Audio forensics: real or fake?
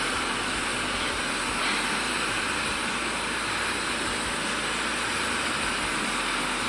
real